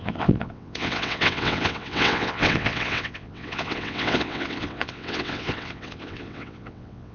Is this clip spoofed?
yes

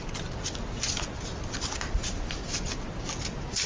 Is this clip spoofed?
no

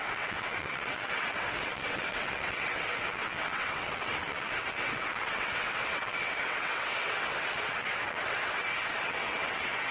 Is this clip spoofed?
yes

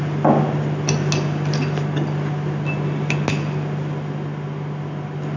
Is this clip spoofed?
no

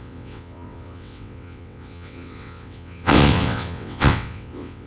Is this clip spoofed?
yes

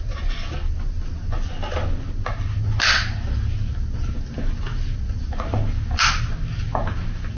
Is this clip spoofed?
no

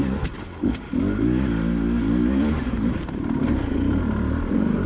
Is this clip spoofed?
no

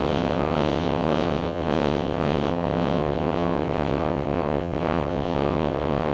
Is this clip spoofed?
yes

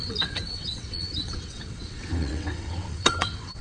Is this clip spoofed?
yes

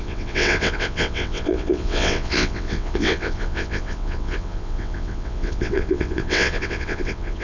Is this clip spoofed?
yes